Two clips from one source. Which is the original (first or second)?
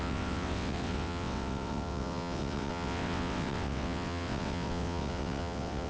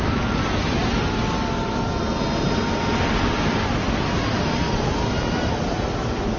second